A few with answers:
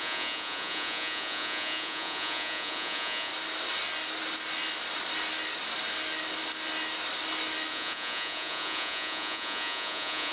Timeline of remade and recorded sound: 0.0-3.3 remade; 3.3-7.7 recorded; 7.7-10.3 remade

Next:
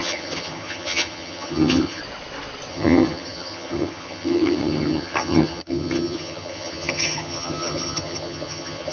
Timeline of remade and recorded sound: 0.0-2.0 remade; 2.0-2.7 recorded; 2.7-8.9 remade

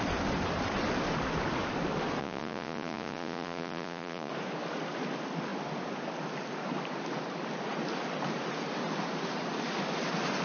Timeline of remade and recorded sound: 0.0-2.2 recorded; 2.2-4.3 remade; 4.3-10.4 recorded

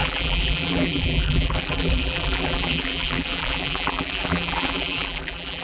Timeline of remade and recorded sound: 0.0-5.6 remade

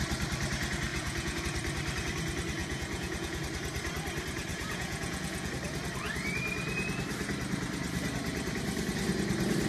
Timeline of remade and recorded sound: 0.0-0.9 recorded; 0.9-1.4 remade; 1.4-2.6 recorded; 2.6-3.4 remade; 3.4-4.5 recorded; 4.5-5.5 remade; 5.5-9.7 recorded

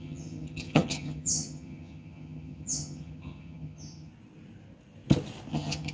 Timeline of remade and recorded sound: 0.0-4.1 remade; 4.1-5.5 recorded; 5.5-5.9 remade